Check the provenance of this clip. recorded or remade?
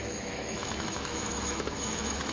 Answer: remade